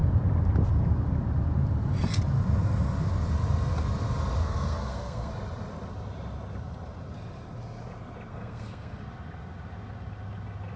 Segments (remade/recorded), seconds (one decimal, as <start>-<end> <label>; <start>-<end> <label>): 0.0-4.4 recorded; 4.4-5.3 remade; 5.3-8.3 recorded; 8.3-9.0 remade; 9.0-10.8 recorded